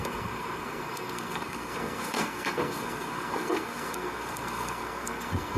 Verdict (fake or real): fake